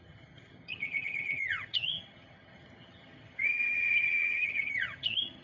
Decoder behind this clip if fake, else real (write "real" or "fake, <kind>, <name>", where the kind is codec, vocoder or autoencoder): fake, vocoder, HiFi-GAN